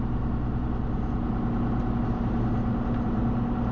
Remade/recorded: recorded